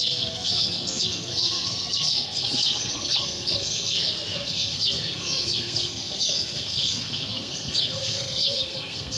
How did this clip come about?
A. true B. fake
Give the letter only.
B